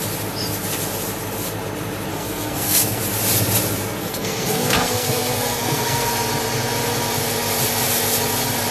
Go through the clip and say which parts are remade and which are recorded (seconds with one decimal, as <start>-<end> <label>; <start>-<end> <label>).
0.0-2.1 recorded; 2.1-3.0 remade; 3.0-4.0 recorded; 4.0-6.1 remade; 6.1-8.7 recorded